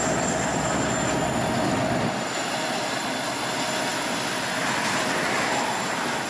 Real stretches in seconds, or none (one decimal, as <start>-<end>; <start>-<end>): 0.0-6.3